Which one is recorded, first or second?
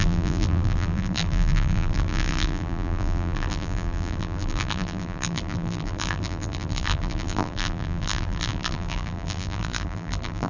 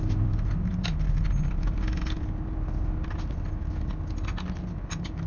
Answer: second